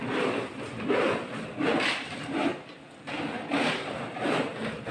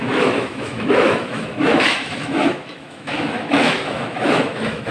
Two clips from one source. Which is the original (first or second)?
first